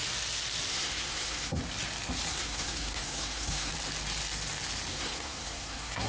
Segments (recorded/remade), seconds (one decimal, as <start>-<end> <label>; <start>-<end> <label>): 0.0-0.7 recorded; 0.7-1.6 remade; 1.6-2.3 recorded; 2.3-3.7 remade; 3.7-4.9 recorded; 4.9-6.1 remade